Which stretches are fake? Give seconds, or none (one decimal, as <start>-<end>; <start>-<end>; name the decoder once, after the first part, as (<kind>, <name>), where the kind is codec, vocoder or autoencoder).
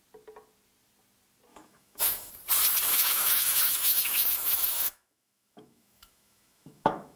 1.5-2.3 (autoencoder, DAC-VAE); 2.9-7.2